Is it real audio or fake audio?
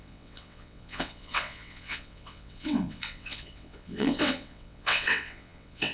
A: fake